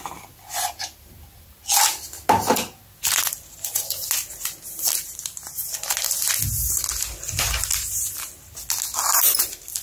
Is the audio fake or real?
real